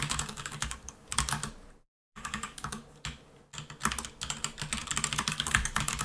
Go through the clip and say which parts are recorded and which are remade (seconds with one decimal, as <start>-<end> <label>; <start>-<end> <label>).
0.0-1.4 remade; 1.4-2.1 recorded; 2.1-2.8 remade; 2.8-5.3 recorded; 5.3-6.0 remade